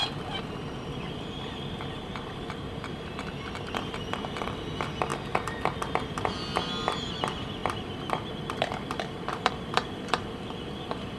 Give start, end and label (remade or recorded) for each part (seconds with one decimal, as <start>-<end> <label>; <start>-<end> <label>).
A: 0.0-5.1 remade; 5.1-6.8 recorded; 6.8-11.2 remade

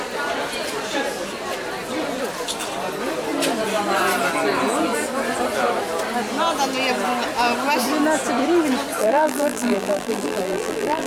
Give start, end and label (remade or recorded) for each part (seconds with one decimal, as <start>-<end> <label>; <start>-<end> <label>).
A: 0.0-9.0 recorded; 9.0-11.1 remade

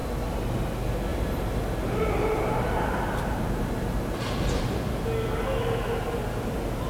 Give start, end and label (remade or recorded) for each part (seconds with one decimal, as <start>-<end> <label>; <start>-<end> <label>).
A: 0.0-1.1 recorded; 1.1-4.8 remade; 4.8-6.9 recorded

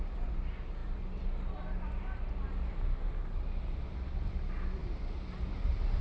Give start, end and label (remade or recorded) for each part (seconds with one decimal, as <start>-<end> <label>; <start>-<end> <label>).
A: 0.0-0.8 recorded; 0.8-2.2 remade; 2.2-3.2 recorded; 3.2-3.8 remade; 3.8-6.0 recorded

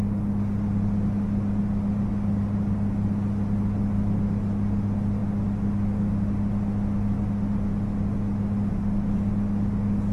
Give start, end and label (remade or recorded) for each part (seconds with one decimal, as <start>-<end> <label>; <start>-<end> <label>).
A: 0.0-10.1 recorded

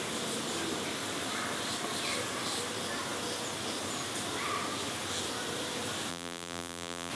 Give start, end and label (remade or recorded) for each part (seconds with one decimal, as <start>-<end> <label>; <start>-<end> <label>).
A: 0.0-6.1 recorded; 6.1-7.1 remade